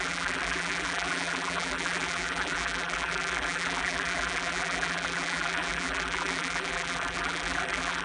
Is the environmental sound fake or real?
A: fake